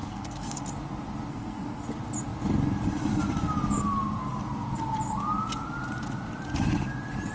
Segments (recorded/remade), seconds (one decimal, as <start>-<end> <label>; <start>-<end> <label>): 0.0-0.6 remade; 0.6-1.3 recorded; 1.3-1.8 remade; 1.8-7.3 recorded